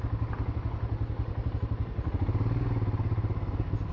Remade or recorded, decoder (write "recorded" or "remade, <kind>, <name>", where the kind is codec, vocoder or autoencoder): recorded